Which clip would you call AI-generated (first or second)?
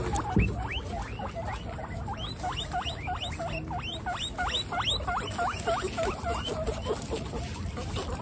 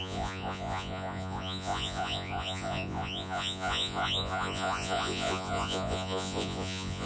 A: second